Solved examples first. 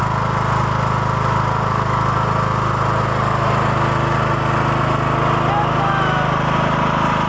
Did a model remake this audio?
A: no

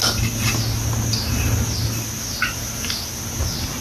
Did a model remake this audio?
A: no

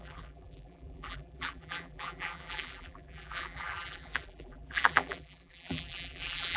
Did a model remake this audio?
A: yes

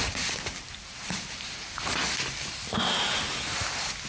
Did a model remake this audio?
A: no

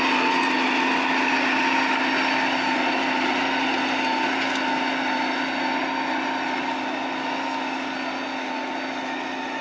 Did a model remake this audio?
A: no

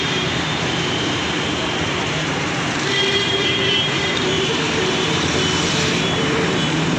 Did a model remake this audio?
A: yes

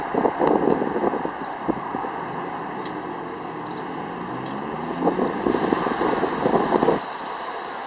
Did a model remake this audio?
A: no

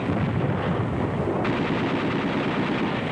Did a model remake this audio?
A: yes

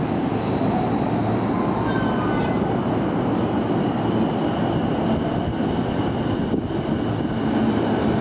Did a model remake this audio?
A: no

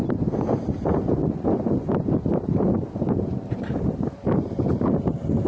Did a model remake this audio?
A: yes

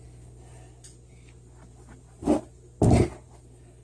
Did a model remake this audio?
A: no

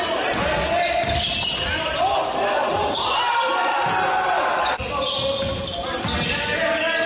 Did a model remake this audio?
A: no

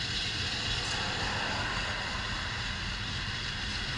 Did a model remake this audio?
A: no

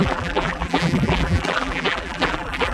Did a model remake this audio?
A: yes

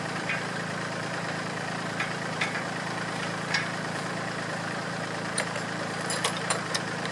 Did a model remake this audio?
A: yes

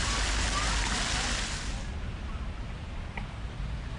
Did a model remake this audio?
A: no